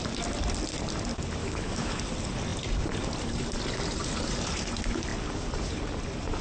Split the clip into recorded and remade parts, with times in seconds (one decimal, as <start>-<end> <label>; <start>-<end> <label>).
0.0-1.4 recorded; 1.4-2.0 remade; 2.0-6.4 recorded